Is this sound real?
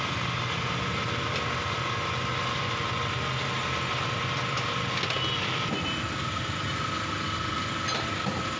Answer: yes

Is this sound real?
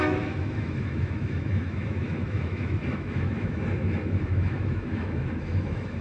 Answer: no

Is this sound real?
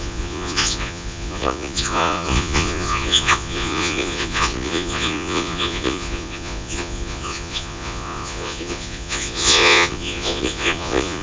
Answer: no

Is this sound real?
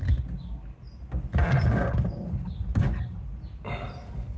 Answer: yes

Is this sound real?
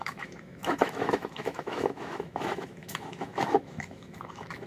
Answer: no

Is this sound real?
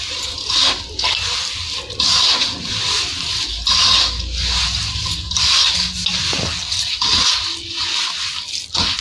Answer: yes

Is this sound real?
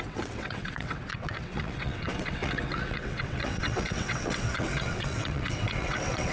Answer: no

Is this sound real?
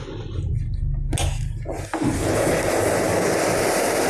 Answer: yes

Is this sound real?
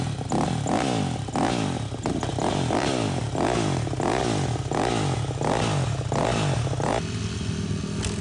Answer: yes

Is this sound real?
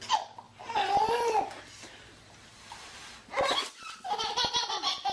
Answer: yes